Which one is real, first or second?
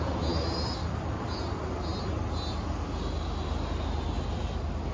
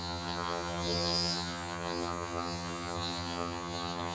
first